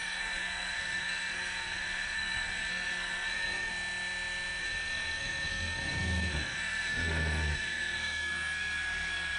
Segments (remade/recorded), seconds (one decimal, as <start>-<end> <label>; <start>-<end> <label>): 0.0-3.7 remade; 3.7-4.6 recorded; 4.6-9.4 remade